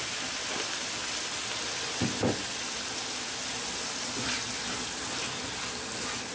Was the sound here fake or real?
real